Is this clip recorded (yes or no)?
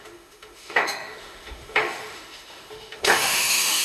no